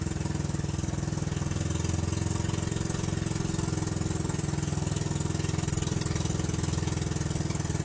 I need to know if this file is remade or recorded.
recorded